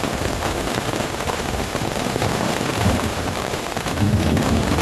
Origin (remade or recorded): remade